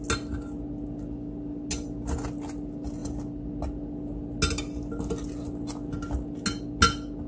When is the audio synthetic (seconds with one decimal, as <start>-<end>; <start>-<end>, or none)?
none